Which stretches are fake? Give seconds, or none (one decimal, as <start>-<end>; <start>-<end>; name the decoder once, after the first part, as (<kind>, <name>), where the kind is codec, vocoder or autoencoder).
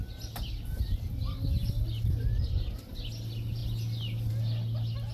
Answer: none